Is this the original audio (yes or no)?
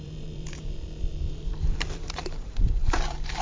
no